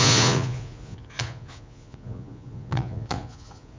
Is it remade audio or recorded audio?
remade